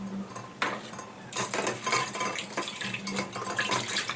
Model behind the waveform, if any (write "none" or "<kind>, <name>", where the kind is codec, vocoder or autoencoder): none